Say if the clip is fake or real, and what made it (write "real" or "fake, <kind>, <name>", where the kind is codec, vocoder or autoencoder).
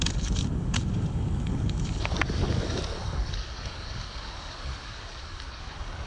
fake, codec, DAC